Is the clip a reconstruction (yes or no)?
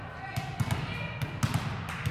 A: no